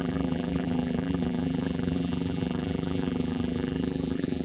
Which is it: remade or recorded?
remade